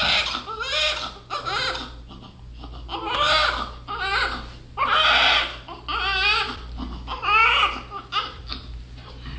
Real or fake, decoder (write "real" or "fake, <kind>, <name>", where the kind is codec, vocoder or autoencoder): real